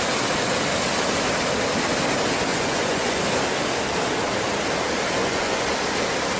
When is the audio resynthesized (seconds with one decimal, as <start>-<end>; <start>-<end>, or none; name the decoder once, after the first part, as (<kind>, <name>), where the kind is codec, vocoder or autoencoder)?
2.5-3.2 (vocoder, Vocos); 5.2-5.7